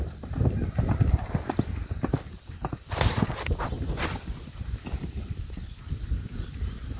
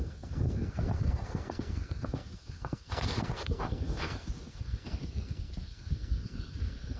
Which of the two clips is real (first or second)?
first